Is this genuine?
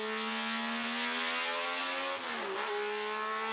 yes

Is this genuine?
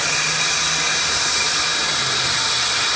yes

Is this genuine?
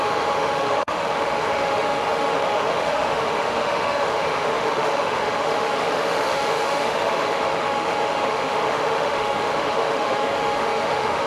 no